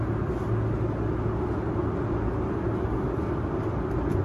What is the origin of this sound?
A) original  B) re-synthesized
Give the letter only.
A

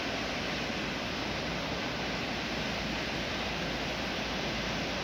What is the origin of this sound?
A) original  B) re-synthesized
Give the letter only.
A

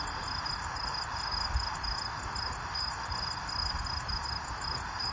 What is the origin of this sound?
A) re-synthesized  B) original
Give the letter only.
B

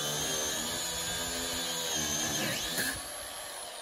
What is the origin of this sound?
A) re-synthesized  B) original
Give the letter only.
B